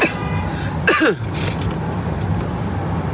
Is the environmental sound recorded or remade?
recorded